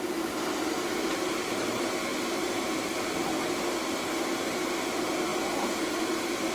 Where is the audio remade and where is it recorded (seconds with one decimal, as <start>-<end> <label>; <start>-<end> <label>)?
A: 0.0-5.3 recorded; 5.3-5.9 remade; 5.9-6.5 recorded